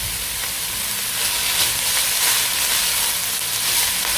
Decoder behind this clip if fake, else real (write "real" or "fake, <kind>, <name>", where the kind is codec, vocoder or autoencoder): real